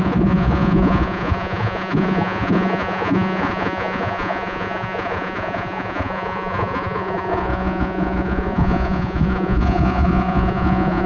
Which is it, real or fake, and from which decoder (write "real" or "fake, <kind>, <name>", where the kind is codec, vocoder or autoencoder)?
fake, vocoder, Vocos